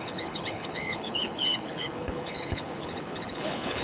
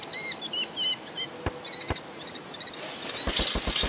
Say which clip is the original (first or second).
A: second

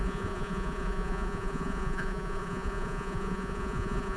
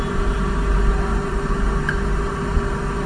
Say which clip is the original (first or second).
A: second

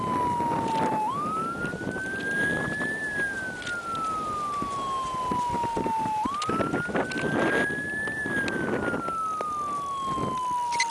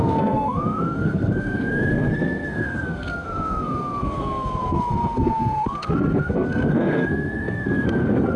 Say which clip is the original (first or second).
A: first